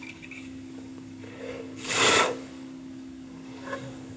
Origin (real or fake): fake